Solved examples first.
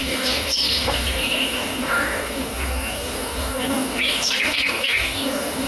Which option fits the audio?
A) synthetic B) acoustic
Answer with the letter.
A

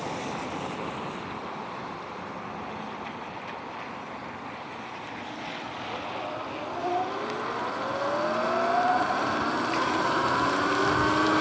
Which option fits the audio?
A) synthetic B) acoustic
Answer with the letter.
B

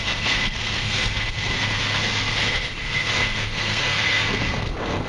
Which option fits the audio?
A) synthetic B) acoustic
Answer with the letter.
A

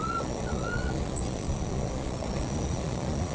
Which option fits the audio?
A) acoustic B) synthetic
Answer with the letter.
B